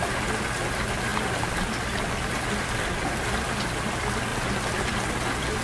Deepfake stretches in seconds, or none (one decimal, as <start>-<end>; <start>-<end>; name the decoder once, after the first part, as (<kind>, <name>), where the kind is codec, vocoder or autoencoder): 4.3-5.0 (vocoder, BigVGAN v2)

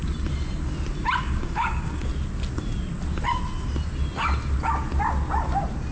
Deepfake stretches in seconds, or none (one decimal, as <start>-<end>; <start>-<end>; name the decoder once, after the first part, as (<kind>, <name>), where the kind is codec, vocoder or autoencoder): 1.2-2.1 (codec, DAC)

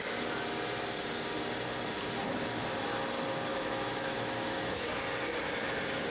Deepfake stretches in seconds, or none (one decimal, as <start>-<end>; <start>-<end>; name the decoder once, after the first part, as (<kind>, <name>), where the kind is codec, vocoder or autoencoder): 3.5-4.9 (autoencoder, DAC-VAE)

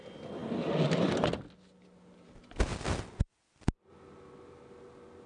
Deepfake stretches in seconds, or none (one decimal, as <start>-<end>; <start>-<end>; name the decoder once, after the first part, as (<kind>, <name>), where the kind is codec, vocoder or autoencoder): none